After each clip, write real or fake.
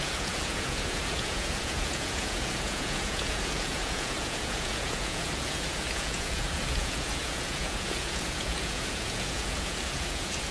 fake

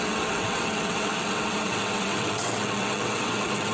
fake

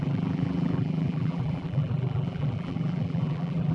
fake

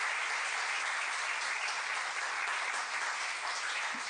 real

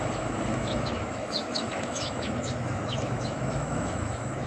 fake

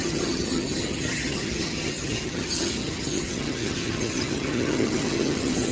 fake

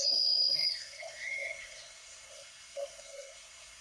fake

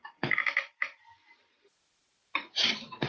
fake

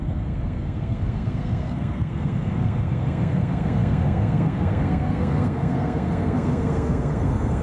fake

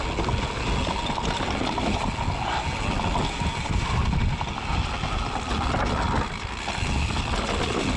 real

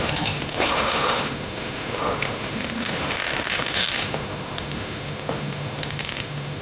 fake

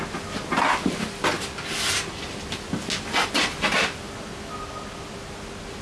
real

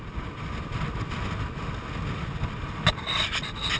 real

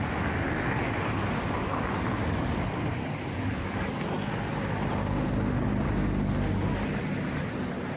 real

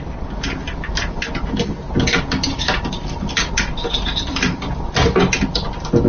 real